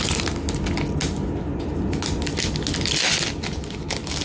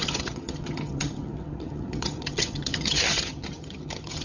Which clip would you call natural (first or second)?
first